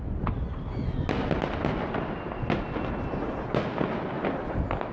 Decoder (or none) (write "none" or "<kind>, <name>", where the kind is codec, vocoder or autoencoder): none